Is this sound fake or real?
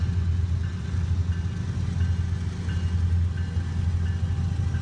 real